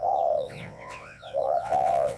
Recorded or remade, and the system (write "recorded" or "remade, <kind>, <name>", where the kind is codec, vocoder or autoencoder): remade, vocoder, WaveNeXt